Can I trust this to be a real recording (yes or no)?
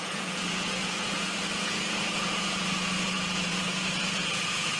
no